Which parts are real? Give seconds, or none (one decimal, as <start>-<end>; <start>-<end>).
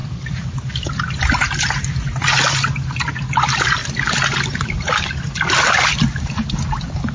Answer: 0.0-7.1